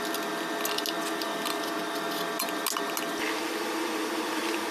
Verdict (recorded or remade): recorded